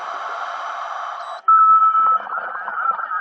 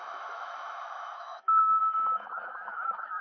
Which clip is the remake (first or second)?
second